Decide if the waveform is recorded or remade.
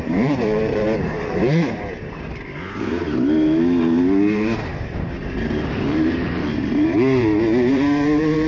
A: remade